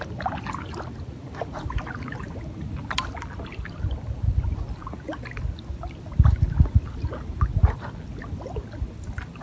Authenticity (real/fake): real